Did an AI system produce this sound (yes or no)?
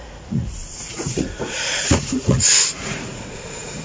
yes